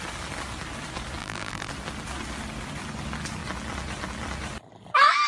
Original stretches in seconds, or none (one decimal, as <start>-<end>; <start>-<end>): 0.0-1.2; 1.7-5.3